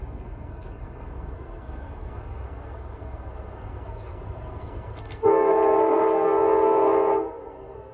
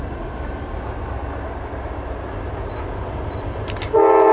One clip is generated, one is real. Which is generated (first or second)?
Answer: first